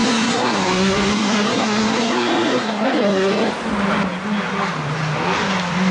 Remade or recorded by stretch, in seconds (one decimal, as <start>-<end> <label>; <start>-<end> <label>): 0.0-3.5 remade; 3.5-5.9 recorded